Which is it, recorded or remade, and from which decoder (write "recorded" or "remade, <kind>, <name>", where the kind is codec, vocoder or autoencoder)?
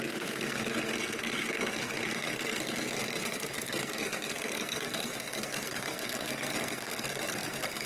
remade, codec, SNAC